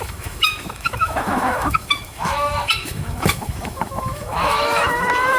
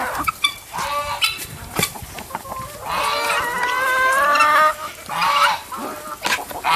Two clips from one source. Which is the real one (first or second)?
second